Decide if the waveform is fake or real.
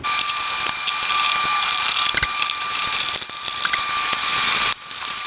real